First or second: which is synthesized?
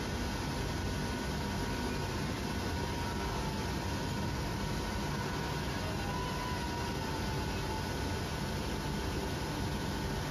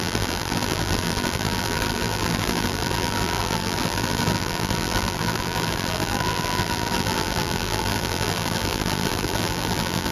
second